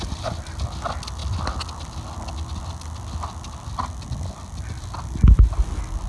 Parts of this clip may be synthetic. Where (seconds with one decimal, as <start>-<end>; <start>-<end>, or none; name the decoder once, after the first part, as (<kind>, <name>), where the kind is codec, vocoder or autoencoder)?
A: none